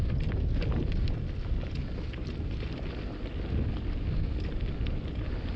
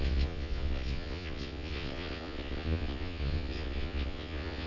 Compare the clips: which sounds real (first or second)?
first